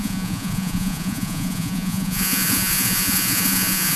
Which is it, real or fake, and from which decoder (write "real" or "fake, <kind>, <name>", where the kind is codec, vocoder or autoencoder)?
fake, vocoder, Vocos